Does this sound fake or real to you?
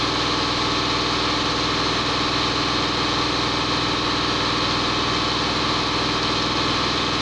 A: real